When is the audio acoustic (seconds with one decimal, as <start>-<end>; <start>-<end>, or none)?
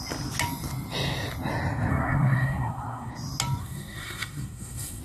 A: 0.0-1.9; 3.1-3.6